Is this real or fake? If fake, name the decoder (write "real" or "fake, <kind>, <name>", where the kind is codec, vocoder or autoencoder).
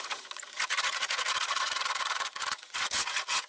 fake, vocoder, Vocos